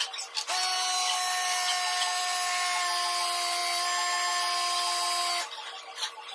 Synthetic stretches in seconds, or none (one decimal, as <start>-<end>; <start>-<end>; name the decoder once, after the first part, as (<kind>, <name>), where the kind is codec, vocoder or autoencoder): none